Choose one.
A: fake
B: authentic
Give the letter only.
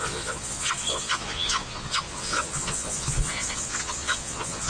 A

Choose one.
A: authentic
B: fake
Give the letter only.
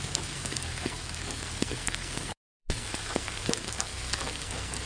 B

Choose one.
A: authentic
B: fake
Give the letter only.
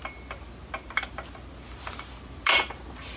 A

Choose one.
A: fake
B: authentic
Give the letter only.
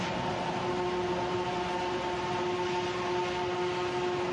B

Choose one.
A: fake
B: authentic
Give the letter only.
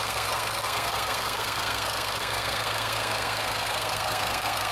A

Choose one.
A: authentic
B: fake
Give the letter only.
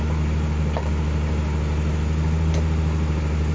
A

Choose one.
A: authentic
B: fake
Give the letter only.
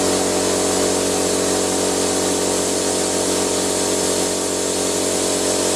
A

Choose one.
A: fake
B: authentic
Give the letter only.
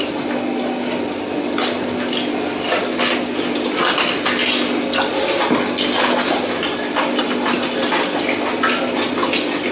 B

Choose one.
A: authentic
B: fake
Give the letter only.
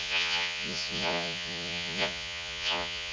B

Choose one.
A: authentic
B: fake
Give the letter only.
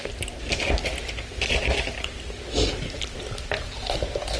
A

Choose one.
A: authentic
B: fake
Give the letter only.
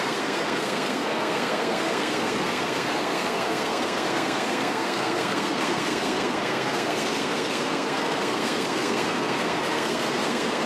B